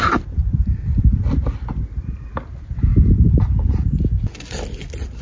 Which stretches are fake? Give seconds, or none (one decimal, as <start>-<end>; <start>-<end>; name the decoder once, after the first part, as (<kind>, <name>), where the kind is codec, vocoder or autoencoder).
none

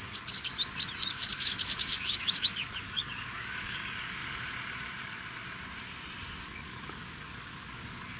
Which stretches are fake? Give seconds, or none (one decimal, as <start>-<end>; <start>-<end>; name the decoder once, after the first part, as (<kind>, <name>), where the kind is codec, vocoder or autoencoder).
0.0-0.5 (codec, DAC); 1.1-4.2; 6.4-8.2

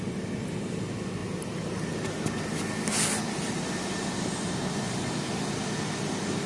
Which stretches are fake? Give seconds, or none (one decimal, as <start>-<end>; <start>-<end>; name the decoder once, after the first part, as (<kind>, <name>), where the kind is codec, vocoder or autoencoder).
none

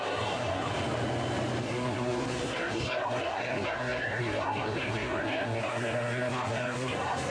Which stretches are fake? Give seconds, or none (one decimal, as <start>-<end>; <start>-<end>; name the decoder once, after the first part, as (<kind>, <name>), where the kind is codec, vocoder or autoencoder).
0.0-0.7 (codec, SNAC); 1.6-7.3

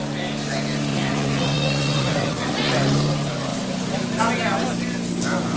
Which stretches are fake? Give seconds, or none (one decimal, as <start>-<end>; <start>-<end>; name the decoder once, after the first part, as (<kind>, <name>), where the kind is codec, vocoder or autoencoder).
0.9-2.7 (vocoder, Vocos)

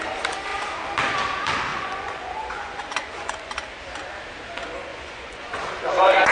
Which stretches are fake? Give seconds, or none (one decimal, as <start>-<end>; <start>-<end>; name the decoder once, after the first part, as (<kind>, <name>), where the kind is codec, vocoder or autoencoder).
1.7-3.5 (vocoder, Vocos); 4.9-6.3